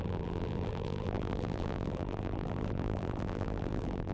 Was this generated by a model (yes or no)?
yes